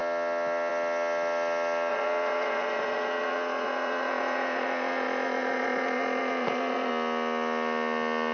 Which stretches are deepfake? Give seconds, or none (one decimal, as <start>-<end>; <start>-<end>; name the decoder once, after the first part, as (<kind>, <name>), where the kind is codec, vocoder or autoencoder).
1.9-6.9 (vocoder, Vocos)

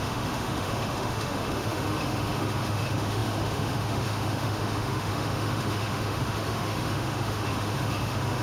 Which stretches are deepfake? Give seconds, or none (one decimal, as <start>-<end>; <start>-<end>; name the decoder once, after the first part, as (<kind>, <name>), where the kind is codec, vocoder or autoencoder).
0.0-8.4 (autoencoder, DAC-VAE)

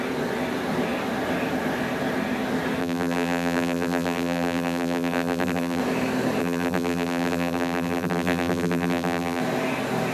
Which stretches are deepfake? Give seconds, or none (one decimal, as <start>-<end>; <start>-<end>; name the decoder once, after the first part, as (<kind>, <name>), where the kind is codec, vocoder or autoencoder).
2.8-5.8 (vocoder, BigVGAN v2); 6.4-9.4

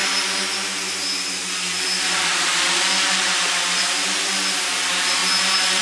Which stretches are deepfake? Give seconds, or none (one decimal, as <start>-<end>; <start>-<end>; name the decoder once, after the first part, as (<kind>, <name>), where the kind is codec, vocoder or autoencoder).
none

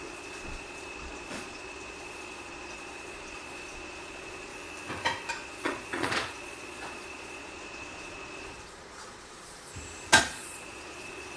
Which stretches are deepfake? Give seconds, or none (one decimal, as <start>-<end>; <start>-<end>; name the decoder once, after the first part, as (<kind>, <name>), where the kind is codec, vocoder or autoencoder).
0.0-4.5 (vocoder, Vocos); 5.3-9.7; 10.2-11.4

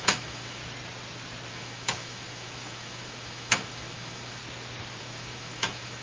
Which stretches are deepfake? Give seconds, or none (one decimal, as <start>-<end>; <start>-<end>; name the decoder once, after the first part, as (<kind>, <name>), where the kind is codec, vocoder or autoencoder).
0.0-0.6 (autoencoder, DAC-VAE); 1.5-4.4; 5.0-6.0

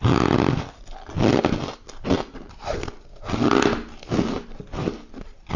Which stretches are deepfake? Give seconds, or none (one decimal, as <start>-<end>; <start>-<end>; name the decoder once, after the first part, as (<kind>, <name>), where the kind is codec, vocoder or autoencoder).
none